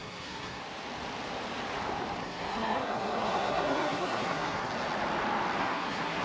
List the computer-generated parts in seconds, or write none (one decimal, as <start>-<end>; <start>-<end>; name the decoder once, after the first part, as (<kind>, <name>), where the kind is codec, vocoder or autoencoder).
0.0-0.6 (codec, SNAC); 2.2-4.7; 5.6-6.2